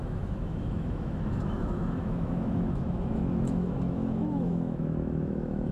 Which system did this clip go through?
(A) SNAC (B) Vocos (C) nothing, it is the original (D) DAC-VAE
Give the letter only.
D